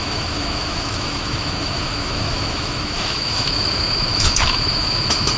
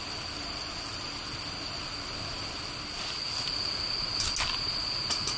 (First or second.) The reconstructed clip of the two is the first